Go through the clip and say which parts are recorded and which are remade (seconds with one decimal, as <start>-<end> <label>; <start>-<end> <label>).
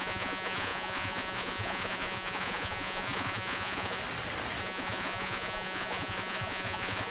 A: 0.0-4.0 remade; 4.0-4.6 recorded; 4.6-7.1 remade